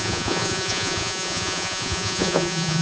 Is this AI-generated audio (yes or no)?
yes